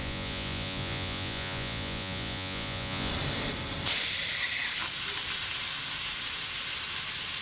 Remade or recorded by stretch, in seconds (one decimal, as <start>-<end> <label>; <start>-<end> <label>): 0.0-3.1 remade; 3.1-7.4 recorded